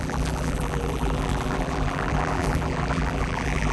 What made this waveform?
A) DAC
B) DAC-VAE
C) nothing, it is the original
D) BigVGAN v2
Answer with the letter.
D